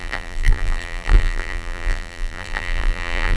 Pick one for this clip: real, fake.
fake